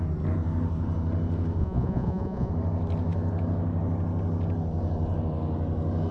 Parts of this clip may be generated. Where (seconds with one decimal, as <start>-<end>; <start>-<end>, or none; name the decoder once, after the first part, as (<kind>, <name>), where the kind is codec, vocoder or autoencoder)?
1.6-2.5 (vocoder, Vocos)